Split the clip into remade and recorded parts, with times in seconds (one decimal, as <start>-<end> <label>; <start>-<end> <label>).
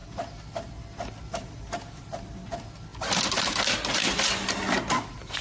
0.0-5.4 recorded